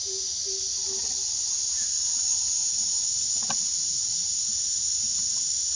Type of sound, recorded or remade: recorded